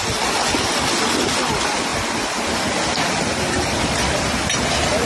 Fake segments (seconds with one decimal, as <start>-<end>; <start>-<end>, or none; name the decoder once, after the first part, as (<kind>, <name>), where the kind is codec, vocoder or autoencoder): none